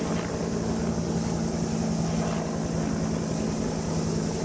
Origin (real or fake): real